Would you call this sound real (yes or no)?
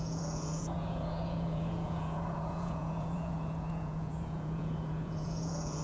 no